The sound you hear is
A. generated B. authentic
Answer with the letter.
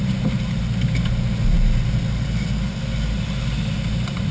B